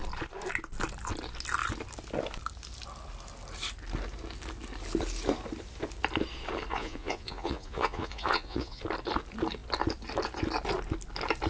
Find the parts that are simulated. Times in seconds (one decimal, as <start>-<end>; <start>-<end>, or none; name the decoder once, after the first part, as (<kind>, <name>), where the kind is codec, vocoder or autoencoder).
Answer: 6.7-8.8 (vocoder, Vocos)

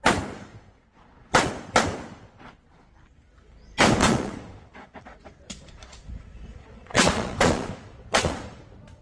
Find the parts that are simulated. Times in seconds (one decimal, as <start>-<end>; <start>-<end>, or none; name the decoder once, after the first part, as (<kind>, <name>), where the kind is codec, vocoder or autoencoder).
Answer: 0.5-1.5 (vocoder, Vocos); 4.0-8.6

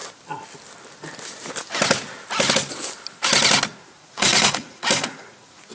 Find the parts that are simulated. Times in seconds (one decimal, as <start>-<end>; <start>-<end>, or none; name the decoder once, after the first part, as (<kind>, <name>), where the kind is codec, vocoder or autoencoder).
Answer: 3.8-5.7 (vocoder, Vocos)

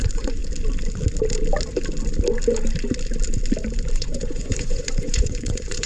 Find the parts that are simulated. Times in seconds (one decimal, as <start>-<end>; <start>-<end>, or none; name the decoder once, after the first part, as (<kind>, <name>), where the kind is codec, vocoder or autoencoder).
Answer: 0.0-0.4 (vocoder, Vocos); 3.9-5.9